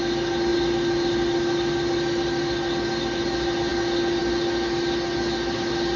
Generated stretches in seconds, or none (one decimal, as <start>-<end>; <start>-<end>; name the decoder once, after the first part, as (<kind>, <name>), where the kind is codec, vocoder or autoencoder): none